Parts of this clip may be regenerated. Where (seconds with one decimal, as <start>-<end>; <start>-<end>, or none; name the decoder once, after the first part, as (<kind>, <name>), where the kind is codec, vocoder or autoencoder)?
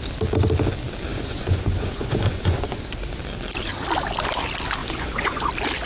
1.1-2.8 (vocoder, Vocos); 4.8-5.5